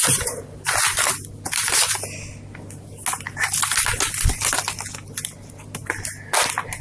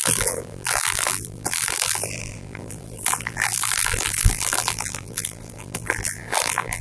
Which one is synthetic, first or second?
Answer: second